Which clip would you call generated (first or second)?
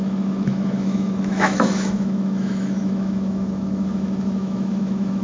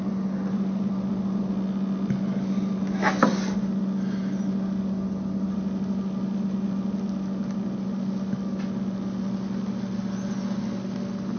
first